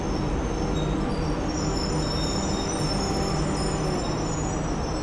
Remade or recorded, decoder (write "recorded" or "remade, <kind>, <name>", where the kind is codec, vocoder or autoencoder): recorded